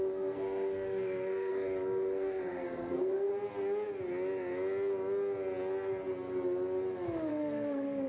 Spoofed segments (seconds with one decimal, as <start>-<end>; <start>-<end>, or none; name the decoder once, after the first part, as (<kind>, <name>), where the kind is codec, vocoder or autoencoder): 0.0-3.3 (codec, SNAC); 7.3-8.1